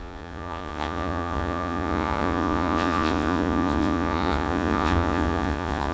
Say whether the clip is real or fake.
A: fake